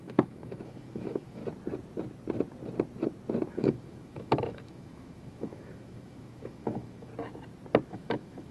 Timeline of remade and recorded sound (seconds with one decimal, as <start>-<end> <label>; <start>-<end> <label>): 0.0-1.4 remade; 1.4-3.5 recorded; 3.5-7.1 remade; 7.1-7.9 recorded; 7.9-8.5 remade